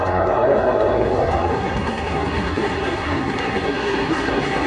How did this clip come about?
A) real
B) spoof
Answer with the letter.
B